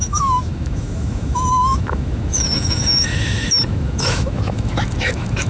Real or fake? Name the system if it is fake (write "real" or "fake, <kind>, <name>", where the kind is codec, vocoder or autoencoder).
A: fake, autoencoder, DAC-VAE